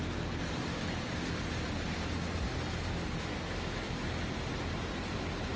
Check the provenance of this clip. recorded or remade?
recorded